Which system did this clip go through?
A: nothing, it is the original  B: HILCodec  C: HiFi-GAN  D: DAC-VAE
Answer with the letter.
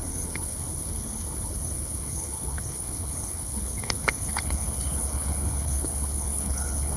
B